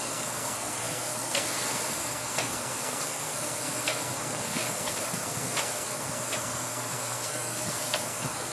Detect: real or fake fake